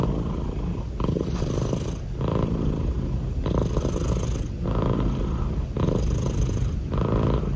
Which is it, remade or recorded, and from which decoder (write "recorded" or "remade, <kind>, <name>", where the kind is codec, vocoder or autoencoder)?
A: recorded